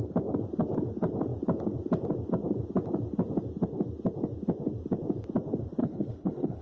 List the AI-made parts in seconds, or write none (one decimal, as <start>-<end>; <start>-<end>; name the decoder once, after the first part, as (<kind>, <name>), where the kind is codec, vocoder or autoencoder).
5.8-6.6 (codec, HILCodec)